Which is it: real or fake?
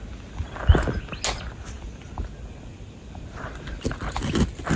real